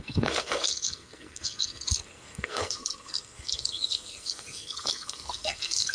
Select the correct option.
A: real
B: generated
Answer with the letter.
B